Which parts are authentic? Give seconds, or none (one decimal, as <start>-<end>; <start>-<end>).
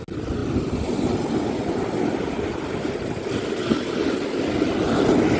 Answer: 0.0-5.4